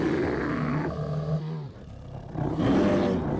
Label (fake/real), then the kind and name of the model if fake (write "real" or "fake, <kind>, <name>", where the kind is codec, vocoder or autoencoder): real